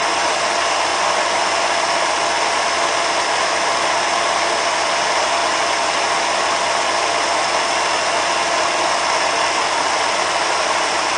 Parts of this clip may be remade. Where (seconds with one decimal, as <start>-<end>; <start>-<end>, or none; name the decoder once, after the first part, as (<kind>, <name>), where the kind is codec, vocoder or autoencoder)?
0.9-1.7 (vocoder, Vocos)